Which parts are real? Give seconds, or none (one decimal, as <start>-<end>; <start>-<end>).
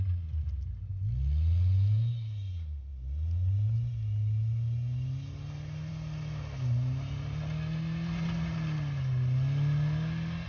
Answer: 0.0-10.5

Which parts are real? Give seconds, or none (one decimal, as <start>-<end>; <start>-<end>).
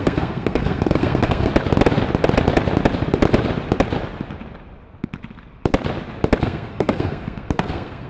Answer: 1.5-6.4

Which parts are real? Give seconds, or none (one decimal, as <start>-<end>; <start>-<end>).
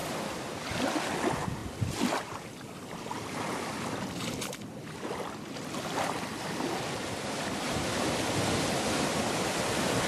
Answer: 1.1-3.1; 6.7-10.1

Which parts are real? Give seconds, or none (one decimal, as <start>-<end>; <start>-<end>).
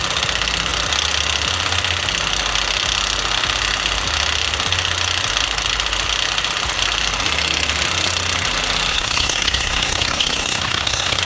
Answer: 0.0-8.9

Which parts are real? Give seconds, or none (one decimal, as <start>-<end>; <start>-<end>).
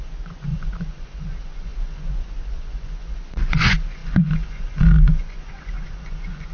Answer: none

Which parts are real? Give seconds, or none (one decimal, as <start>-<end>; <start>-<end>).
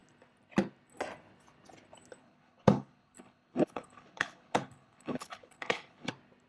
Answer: 0.0-2.2; 6.1-6.5